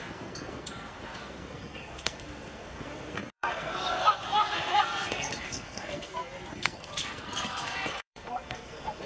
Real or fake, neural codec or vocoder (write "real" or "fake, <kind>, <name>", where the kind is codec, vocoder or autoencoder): fake, codec, SNAC